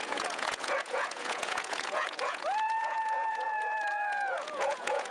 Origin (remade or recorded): remade